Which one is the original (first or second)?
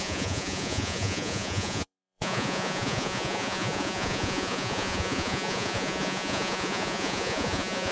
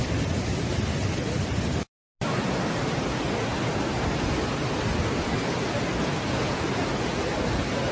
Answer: second